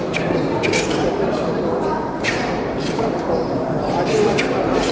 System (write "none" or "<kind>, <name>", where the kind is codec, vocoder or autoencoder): vocoder, BigVGAN v2